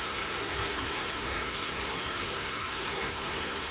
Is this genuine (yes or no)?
no